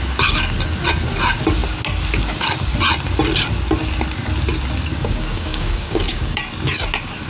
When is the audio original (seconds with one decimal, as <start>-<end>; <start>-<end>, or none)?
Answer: 0.0-4.9; 6.4-7.3